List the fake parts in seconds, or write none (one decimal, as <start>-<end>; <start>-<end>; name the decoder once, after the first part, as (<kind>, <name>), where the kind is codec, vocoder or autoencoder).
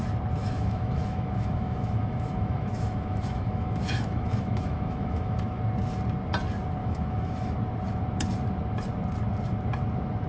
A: 0.4-5.6 (autoencoder, DAC-VAE); 6.8-7.5